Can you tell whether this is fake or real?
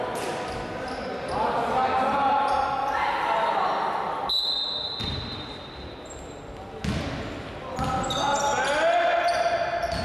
real